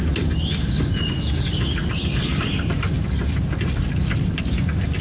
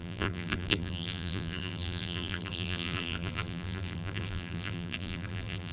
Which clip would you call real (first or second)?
first